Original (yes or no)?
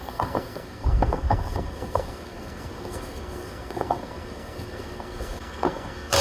no